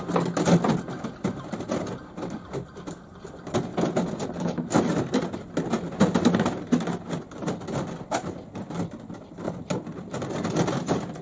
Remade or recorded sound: recorded